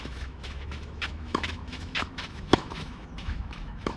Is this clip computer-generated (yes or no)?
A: yes